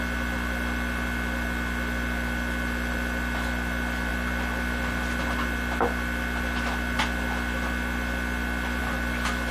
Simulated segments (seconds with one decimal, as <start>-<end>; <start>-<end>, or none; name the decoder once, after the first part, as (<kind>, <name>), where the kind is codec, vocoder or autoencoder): none